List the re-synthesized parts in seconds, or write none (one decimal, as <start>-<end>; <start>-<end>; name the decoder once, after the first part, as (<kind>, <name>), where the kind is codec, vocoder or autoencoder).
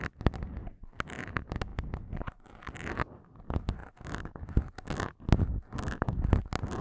none